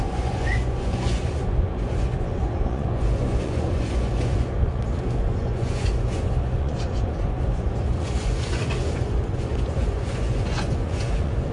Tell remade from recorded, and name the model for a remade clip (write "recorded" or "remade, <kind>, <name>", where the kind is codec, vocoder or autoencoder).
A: remade, vocoder, Vocos